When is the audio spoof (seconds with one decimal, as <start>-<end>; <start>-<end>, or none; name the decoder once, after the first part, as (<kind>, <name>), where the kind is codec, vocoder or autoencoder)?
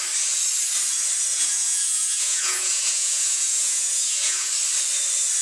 1.3-4.5 (vocoder, Vocos)